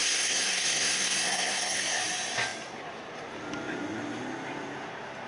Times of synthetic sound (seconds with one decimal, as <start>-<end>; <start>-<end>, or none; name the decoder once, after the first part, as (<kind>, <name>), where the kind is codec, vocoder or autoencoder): 0.0-2.0 (codec, SNAC)